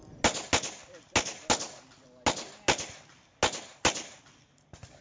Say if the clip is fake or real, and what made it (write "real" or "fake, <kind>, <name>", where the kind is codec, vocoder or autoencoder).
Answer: real